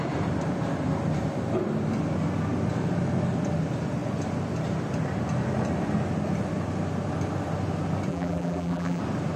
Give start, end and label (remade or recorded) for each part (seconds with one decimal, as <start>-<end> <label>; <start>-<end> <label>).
0.0-8.1 recorded; 8.1-9.0 remade; 9.0-9.4 recorded